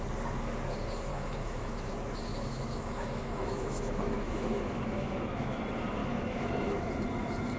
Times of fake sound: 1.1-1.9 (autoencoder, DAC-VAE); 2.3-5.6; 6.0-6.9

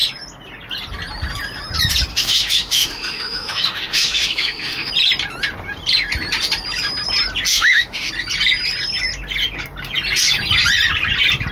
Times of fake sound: 2.1-4.9 (autoencoder, DAC-VAE); 7.5-8.1

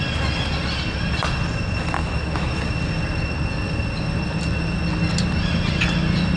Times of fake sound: 2.0-2.5 (autoencoder, DAC-VAE)